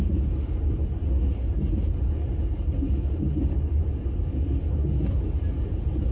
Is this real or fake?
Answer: real